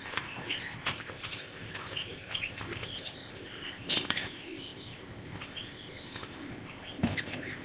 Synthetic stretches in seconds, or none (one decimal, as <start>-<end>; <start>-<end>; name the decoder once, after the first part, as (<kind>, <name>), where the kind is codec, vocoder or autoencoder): 0.0-7.6 (codec, ZipCodec)